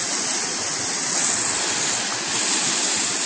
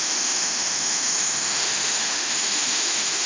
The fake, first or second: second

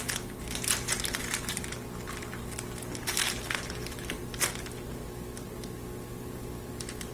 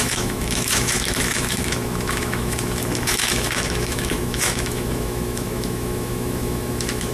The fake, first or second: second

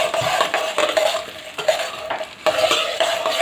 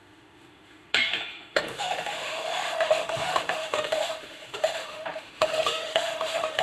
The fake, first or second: second